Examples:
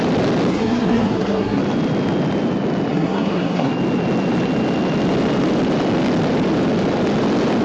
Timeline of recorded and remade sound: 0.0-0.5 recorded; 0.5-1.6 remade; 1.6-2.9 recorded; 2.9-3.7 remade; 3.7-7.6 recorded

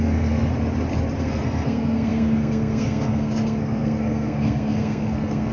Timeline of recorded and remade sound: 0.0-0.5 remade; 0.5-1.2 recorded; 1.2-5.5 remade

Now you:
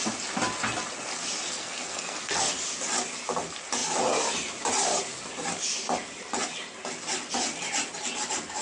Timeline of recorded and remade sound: 0.0-1.5 recorded; 1.5-2.5 remade; 2.5-8.6 recorded

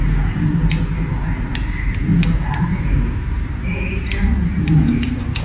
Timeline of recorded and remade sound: 0.0-5.4 recorded

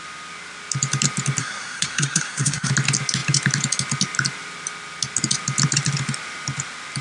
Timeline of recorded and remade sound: 0.0-1.4 recorded; 1.4-2.7 remade; 2.7-7.0 recorded

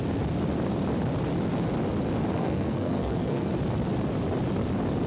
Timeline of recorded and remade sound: 0.0-2.3 recorded; 2.3-3.5 remade; 3.5-5.1 recorded